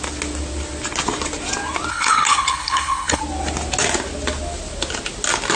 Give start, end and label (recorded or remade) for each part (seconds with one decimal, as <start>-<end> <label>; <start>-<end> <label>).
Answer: 0.0-1.9 recorded; 1.9-3.2 remade; 3.2-5.6 recorded